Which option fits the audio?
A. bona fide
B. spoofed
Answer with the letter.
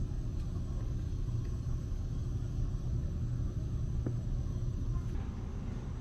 A